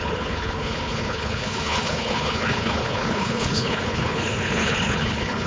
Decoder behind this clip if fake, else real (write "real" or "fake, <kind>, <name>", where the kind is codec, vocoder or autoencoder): fake, codec, HILCodec